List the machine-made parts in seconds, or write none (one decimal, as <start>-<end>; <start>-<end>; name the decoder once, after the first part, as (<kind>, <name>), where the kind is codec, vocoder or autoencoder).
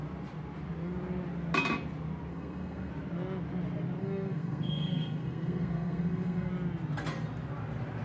2.3-2.9 (codec, SNAC); 4.0-6.5